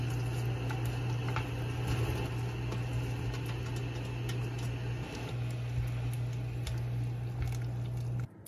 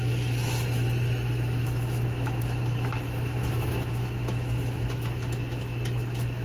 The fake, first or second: second